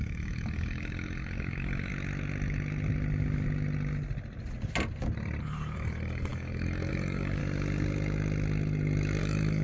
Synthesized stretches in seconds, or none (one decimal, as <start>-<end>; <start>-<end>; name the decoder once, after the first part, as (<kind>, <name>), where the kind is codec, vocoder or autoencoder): 0.0-1.9 (codec, DAC); 5.4-7.4; 9.2-9.6